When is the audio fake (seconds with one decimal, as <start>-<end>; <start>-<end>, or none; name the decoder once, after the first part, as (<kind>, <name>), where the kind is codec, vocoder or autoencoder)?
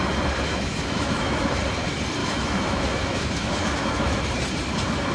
0.5-1.6 (autoencoder, DAC-VAE); 2.2-4.2